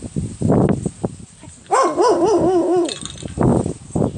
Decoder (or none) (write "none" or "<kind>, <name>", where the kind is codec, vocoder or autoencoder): none